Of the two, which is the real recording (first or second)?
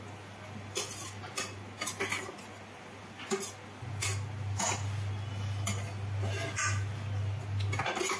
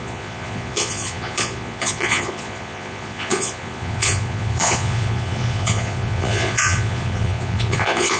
first